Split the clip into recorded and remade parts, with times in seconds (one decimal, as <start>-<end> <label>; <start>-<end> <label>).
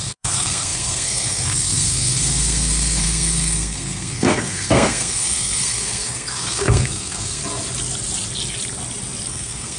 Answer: 0.0-7.4 remade; 7.4-9.3 recorded; 9.3-9.8 remade